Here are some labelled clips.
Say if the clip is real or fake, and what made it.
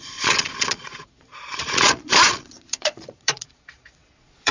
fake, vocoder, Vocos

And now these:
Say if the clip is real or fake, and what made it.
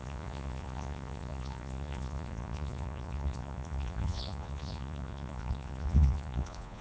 fake, vocoder, Vocos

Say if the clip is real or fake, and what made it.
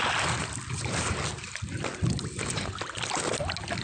real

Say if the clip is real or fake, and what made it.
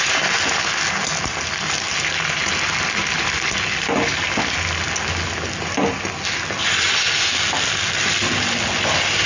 real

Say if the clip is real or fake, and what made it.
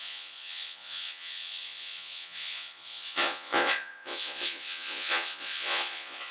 fake, vocoder, Vocos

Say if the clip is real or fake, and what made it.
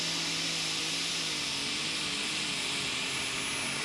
real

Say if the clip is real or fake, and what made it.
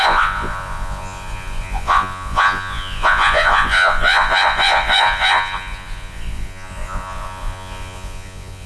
fake, vocoder, Vocos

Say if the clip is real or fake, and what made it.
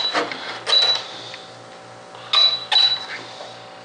real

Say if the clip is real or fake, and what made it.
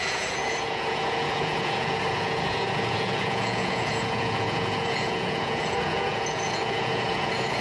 fake, vocoder, Vocos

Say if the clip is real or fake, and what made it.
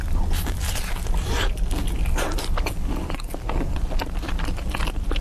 real